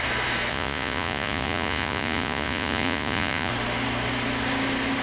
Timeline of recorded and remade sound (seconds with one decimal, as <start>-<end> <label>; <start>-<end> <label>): 0.0-0.5 recorded; 0.5-3.5 remade; 3.5-5.0 recorded